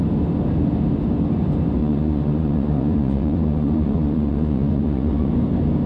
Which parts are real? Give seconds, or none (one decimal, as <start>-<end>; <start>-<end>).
0.0-1.8; 5.3-5.9